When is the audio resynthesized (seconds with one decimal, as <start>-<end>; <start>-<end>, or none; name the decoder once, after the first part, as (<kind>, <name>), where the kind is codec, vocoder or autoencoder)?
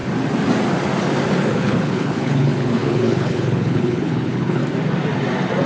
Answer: 1.6-4.6 (codec, HILCodec)